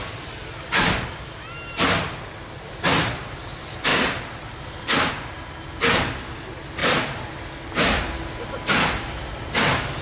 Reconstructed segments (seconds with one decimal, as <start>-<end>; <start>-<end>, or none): 6.8-9.3